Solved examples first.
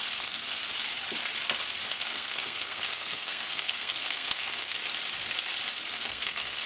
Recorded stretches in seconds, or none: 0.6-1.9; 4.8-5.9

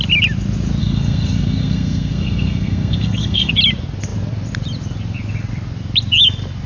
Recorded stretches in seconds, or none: 0.0-0.8; 3.5-6.7

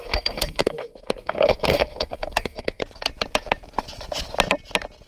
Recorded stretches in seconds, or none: 2.8-5.1